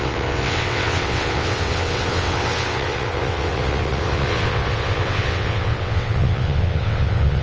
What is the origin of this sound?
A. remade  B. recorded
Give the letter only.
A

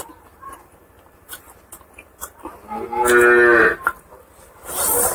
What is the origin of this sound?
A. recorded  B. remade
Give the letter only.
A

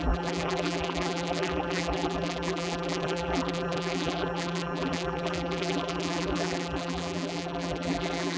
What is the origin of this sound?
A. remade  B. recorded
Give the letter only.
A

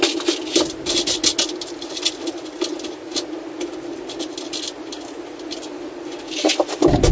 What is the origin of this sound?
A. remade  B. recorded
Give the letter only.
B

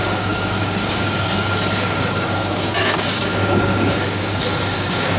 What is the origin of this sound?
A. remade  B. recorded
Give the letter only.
A